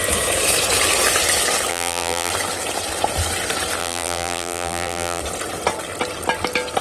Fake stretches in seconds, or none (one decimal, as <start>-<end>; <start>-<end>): 1.7-2.3; 3.8-5.2